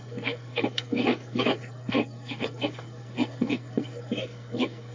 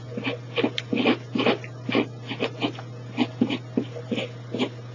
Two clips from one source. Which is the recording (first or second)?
second